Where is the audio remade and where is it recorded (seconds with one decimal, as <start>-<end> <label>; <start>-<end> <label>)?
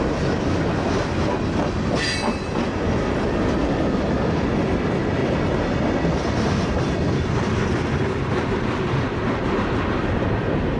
0.0-10.8 recorded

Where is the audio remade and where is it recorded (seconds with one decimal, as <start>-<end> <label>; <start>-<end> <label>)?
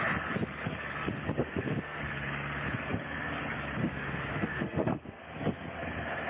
0.0-1.4 recorded; 1.4-2.0 remade; 2.0-3.8 recorded; 3.8-5.2 remade; 5.2-6.3 recorded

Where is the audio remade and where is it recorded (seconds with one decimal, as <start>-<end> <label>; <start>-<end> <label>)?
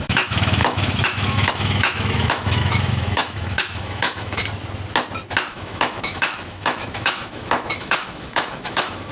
0.0-4.4 remade; 4.4-5.5 recorded; 5.5-9.1 remade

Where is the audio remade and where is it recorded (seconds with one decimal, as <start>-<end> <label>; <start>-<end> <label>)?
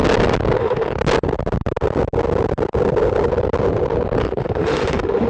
0.0-0.6 recorded; 0.6-1.0 remade; 1.0-4.2 recorded; 4.2-5.3 remade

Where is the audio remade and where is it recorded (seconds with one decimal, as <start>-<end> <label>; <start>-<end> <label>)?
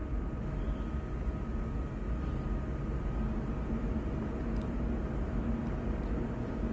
0.0-6.7 recorded